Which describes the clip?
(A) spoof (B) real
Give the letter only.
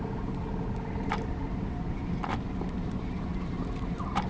B